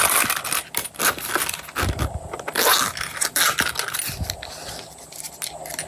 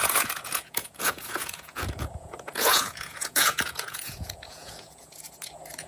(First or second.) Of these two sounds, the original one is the first